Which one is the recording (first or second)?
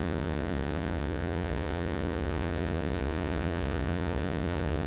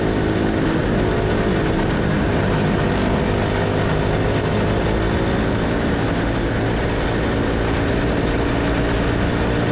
second